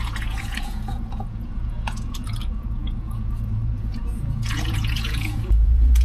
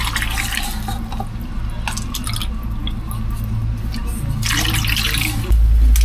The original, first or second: second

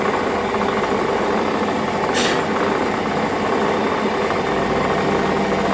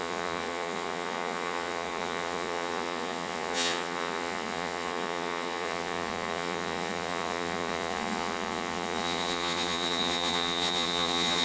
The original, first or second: first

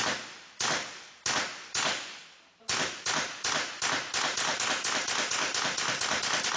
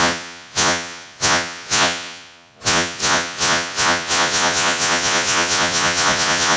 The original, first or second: first